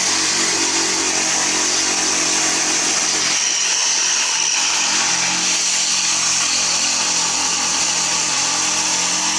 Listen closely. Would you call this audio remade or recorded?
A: recorded